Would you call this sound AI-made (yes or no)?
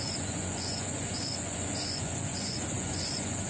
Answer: yes